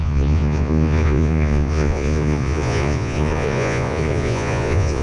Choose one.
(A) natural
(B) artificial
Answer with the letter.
B